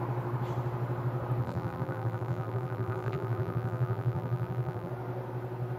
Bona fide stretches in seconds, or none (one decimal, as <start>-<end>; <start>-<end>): 0.0-1.4; 4.9-5.8